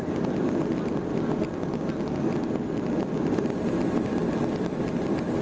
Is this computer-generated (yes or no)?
no